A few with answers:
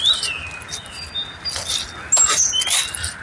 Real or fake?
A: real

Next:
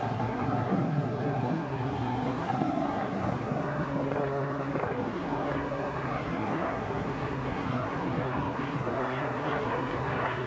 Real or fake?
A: fake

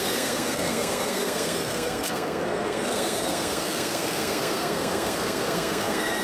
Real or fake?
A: fake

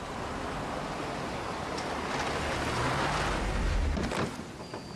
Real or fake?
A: real